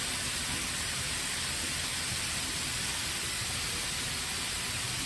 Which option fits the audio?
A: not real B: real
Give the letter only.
B